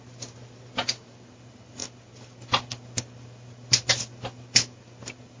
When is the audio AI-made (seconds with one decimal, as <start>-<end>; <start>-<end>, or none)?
none